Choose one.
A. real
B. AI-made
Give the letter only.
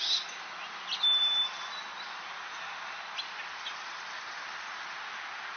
A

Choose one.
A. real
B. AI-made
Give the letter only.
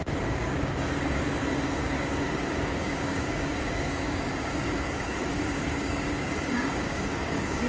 B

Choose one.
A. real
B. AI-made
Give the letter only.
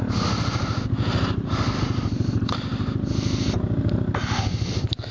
A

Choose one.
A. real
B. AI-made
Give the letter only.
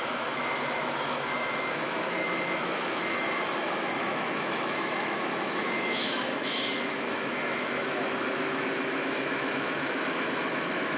B